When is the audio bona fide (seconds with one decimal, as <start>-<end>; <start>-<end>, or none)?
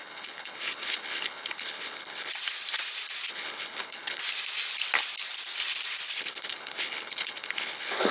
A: 2.3-3.3; 4.2-6.2